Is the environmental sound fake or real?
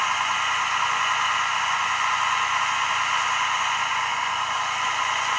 fake